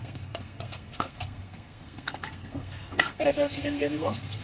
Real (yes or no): no